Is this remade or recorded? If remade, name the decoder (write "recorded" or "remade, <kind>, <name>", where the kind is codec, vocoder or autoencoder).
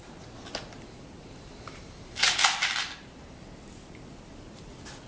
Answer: recorded